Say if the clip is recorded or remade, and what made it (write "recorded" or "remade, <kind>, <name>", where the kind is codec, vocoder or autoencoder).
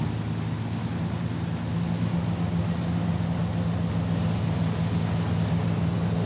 recorded